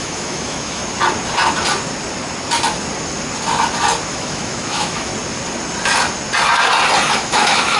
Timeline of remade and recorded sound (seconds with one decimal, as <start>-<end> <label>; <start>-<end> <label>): 0.0-0.8 remade; 0.8-4.1 recorded; 4.1-5.1 remade; 5.1-7.1 recorded; 7.1-7.8 remade